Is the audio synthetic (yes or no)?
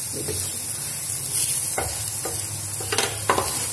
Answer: no